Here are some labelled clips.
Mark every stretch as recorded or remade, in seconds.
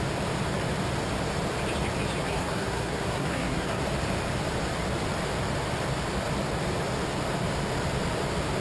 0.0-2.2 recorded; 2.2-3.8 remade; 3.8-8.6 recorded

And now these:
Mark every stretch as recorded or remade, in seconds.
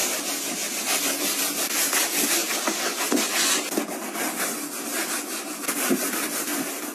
0.0-6.9 recorded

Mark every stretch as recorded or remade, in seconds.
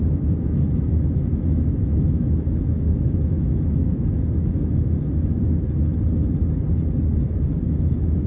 0.0-5.9 remade; 5.9-7.6 recorded; 7.6-8.3 remade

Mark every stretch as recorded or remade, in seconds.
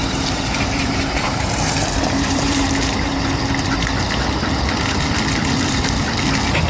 0.0-2.7 remade; 2.7-6.7 recorded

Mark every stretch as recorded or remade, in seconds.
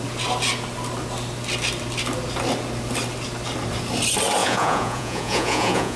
0.0-4.4 recorded; 4.4-6.0 remade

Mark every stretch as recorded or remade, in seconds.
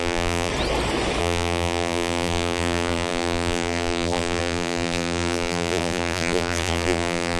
0.0-0.5 remade; 0.5-1.2 recorded; 1.2-7.4 remade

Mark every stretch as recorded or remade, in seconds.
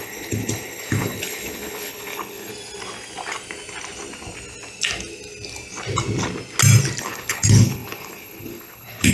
0.0-2.5 remade; 2.5-7.0 recorded; 7.0-9.1 remade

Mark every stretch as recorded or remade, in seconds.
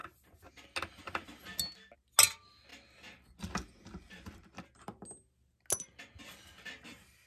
0.0-7.3 recorded